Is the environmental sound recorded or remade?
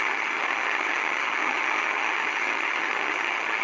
remade